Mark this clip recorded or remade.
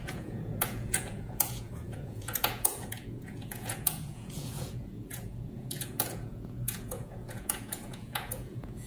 remade